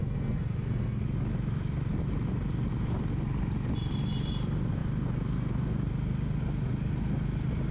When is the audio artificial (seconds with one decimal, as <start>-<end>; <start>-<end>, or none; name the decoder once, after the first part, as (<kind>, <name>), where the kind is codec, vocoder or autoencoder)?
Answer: 0.0-1.0 (codec, SNAC)